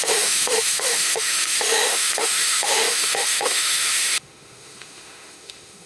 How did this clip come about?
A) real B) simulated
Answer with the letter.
B